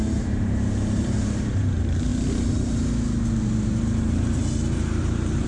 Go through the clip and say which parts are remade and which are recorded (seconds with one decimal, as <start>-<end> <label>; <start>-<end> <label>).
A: 0.0-2.1 remade; 2.1-3.4 recorded; 3.4-4.4 remade; 4.4-5.0 recorded; 5.0-5.5 remade